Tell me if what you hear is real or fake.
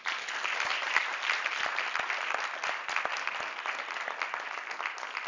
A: real